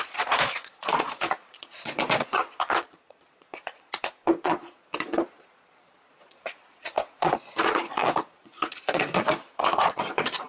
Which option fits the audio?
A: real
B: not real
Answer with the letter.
B